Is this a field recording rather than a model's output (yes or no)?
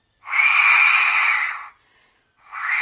yes